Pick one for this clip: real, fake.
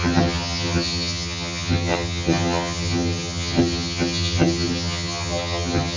fake